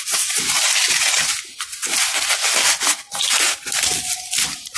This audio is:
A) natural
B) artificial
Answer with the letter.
A